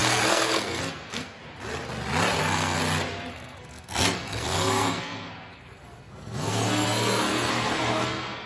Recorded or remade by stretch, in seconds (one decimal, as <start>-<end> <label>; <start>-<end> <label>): 0.0-1.4 remade; 1.4-2.4 recorded; 2.4-2.8 remade; 2.8-3.3 recorded; 3.3-8.5 remade